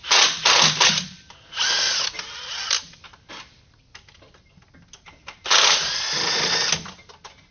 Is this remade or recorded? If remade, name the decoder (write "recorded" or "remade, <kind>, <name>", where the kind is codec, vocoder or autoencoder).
recorded